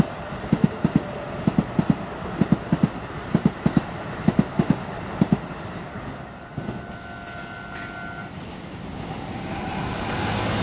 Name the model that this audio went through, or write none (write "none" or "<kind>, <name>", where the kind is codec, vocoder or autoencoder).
none